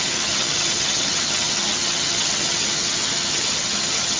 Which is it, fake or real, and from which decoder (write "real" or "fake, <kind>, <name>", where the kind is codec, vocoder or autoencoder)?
fake, vocoder, HiFi-GAN